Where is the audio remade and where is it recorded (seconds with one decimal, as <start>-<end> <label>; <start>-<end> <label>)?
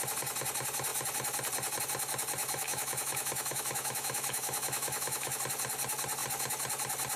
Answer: 0.0-2.4 recorded; 2.4-5.4 remade; 5.4-7.2 recorded